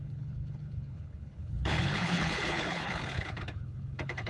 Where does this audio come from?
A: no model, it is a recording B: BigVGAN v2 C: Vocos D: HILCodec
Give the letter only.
D